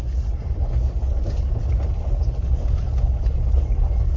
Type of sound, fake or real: real